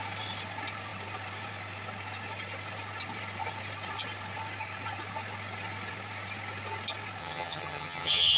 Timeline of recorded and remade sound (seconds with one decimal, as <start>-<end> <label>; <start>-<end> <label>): 0.0-7.2 recorded; 7.2-8.4 remade

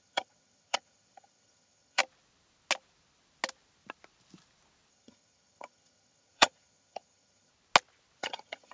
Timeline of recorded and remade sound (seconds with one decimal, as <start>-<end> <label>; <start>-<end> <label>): 0.0-2.0 remade; 2.0-4.9 recorded; 4.9-7.5 remade; 7.5-8.2 recorded; 8.2-8.7 remade

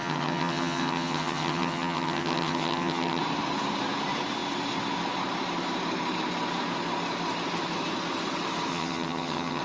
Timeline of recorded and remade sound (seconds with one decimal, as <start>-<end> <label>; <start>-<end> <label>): 0.0-3.2 remade; 3.2-8.7 recorded; 8.7-9.6 remade

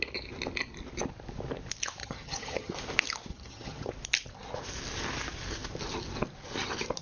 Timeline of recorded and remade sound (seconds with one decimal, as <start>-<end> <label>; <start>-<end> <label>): 0.0-2.0 recorded; 2.0-2.7 remade; 2.7-3.3 recorded; 3.3-3.9 remade; 3.9-7.0 recorded

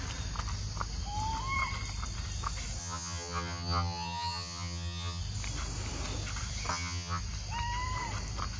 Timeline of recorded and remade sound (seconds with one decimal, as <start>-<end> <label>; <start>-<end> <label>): 0.0-2.8 recorded; 2.8-5.2 remade; 5.2-6.7 recorded; 6.7-7.2 remade; 7.2-8.6 recorded

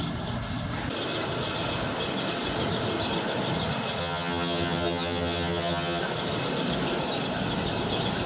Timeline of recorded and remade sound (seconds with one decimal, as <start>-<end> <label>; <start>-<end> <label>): 0.0-4.0 recorded; 4.0-6.0 remade; 6.0-8.3 recorded

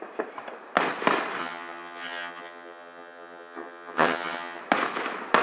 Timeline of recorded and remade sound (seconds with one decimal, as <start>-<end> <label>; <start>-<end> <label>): 0.0-1.4 recorded; 1.4-4.6 remade; 4.6-5.4 recorded

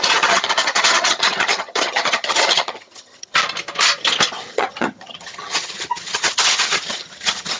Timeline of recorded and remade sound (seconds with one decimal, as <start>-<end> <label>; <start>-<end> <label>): 0.0-3.4 remade; 3.4-4.5 recorded; 4.5-7.6 remade